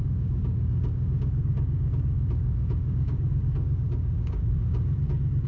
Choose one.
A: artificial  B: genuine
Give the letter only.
A